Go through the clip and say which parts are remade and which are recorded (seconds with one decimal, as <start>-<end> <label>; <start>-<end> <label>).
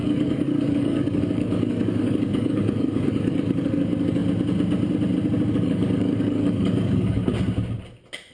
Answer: 0.0-4.2 remade; 4.2-5.5 recorded; 5.5-7.2 remade; 7.2-8.3 recorded